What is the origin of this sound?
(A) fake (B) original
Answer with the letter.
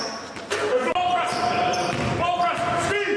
B